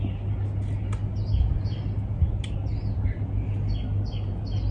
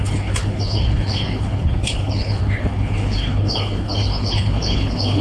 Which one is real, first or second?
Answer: first